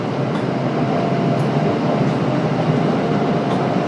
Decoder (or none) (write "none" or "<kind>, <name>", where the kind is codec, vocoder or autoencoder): none